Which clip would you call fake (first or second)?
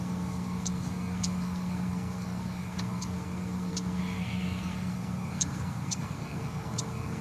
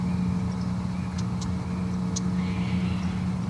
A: first